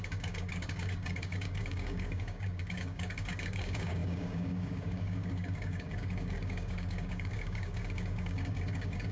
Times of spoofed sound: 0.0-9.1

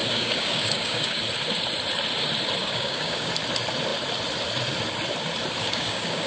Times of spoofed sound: 0.0-1.2; 2.6-3.3; 5.6-6.3

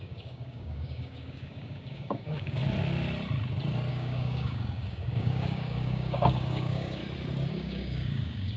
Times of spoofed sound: 0.0-2.6; 3.9-7.0; 7.5-8.6

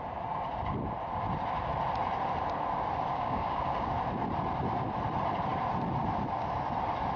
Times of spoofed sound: 3.1-3.9